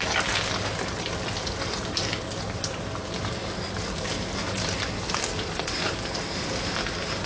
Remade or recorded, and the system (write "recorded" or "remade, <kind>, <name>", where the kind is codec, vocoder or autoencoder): recorded